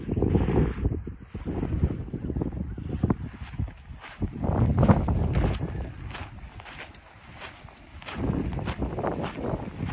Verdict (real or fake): real